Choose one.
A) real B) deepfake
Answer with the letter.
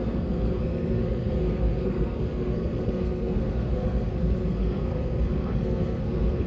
B